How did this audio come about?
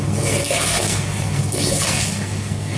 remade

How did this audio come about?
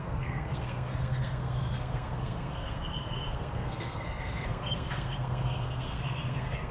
remade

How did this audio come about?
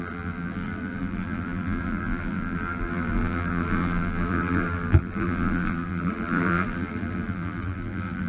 remade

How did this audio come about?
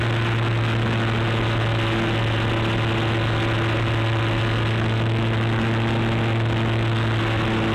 recorded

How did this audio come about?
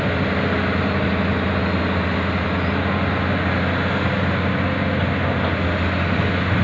recorded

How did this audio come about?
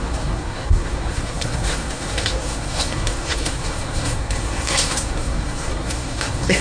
remade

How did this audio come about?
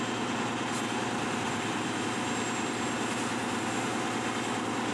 recorded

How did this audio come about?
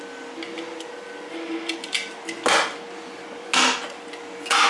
recorded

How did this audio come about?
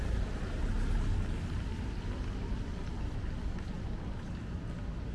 recorded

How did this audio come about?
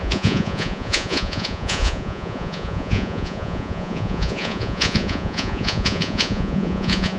remade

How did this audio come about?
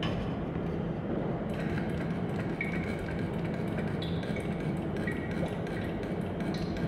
recorded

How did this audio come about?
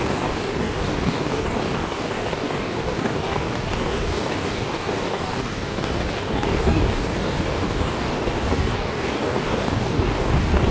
remade